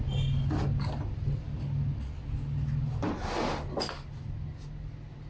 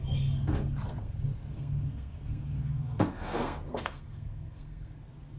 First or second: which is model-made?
second